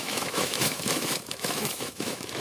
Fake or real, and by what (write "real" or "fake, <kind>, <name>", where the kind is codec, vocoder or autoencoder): fake, autoencoder, DAC-VAE